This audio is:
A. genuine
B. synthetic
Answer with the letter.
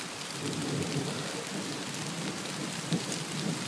B